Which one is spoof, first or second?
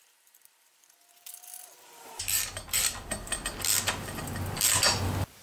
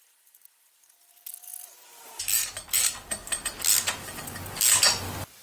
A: first